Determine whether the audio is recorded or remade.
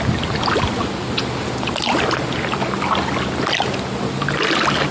recorded